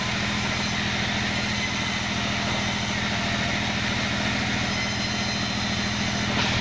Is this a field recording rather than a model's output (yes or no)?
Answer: yes